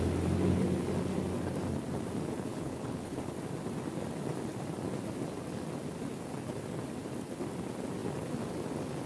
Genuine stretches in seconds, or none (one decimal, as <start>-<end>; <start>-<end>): 0.0-2.5; 3.2-9.1

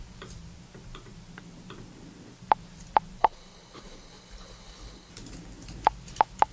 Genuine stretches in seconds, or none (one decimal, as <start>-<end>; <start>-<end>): 0.0-3.2; 5.1-6.5

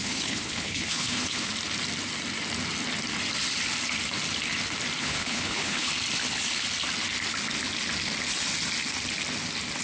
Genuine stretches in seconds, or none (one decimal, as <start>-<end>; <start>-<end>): 1.5-5.0; 5.9-9.8

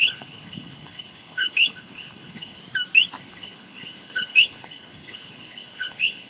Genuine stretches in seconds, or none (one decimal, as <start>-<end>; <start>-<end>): 2.6-3.2

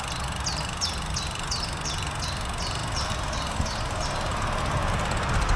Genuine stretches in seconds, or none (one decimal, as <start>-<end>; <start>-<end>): 0.0-5.6

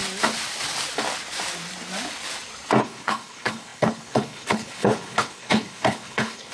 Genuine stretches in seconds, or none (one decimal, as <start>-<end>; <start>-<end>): 0.0-2.8